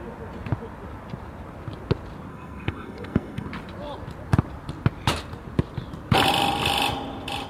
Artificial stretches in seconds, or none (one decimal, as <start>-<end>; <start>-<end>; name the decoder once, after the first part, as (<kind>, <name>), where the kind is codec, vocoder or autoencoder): 2.3-3.5 (codec, SNAC)